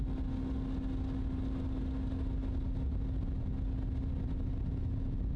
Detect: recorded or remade recorded